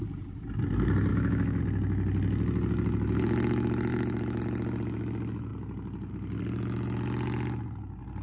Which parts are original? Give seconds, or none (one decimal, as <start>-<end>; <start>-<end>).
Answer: 0.0-1.1; 1.6-3.9; 4.4-8.2